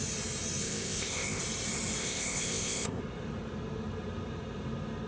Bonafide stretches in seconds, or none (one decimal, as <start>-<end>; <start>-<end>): 0.0-0.6; 1.4-2.0; 3.0-5.1